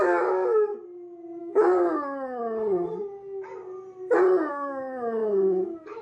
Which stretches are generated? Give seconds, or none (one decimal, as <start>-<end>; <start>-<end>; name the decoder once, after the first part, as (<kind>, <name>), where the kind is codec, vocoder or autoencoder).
0.0-0.7 (codec, DAC); 1.4-2.4; 4.5-6.0